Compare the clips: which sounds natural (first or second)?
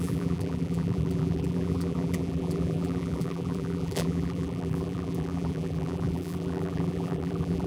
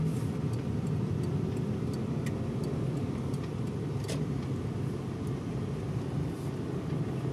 second